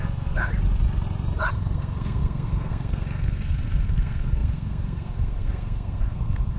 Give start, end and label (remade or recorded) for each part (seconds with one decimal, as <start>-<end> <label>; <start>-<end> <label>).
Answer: 0.0-0.5 remade; 0.5-1.5 recorded; 1.5-6.6 remade